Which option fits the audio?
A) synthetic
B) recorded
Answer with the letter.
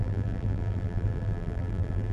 A